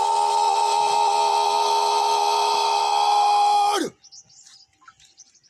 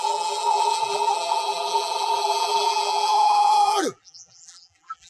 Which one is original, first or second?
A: first